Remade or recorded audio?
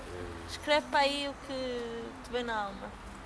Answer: recorded